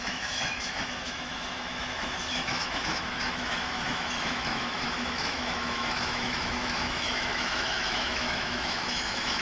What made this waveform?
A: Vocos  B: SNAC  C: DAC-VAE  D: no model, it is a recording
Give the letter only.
C